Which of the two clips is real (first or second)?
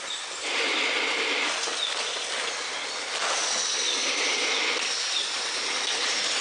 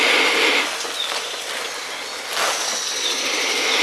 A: second